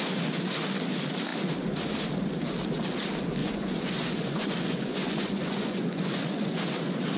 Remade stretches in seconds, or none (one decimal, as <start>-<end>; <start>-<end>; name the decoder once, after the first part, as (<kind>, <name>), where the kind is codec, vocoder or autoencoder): 3.4-6.6 (vocoder, Vocos)